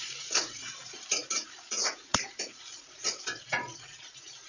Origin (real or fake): fake